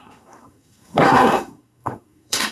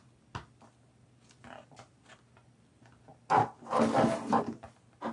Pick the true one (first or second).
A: second